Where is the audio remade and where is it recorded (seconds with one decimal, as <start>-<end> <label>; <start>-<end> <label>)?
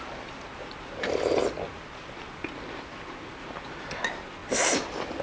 0.0-5.2 recorded